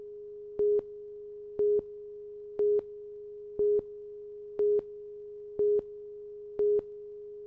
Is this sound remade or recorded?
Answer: recorded